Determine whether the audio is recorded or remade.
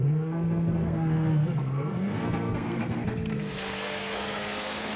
remade